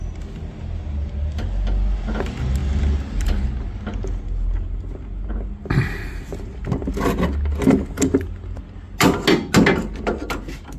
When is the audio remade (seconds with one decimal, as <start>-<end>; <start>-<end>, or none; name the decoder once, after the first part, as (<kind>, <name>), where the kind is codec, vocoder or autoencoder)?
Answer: none